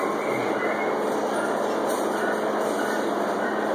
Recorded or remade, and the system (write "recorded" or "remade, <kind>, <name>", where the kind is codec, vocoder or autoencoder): recorded